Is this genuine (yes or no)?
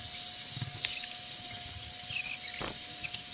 yes